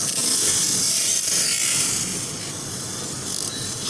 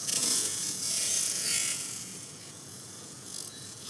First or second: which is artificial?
second